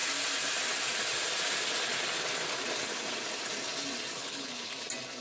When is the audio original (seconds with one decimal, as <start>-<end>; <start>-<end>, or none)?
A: 0.0-4.2; 4.7-5.2